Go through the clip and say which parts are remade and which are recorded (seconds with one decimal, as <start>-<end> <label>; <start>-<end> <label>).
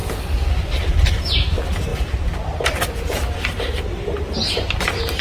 0.0-5.2 recorded